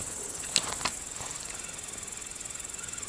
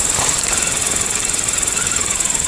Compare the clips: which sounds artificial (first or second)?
second